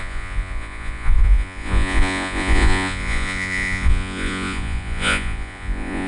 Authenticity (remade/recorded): remade